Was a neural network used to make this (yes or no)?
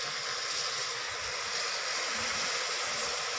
no